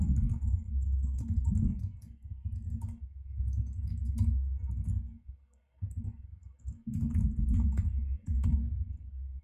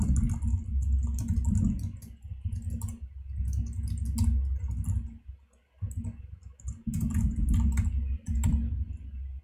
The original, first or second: second